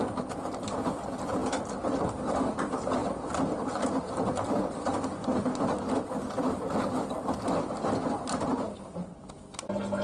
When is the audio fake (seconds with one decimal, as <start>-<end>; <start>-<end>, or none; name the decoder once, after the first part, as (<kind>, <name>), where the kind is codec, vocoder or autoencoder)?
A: none